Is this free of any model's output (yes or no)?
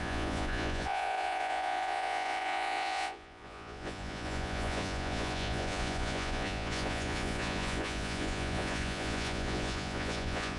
no